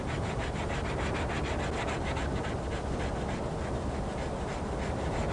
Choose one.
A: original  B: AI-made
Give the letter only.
A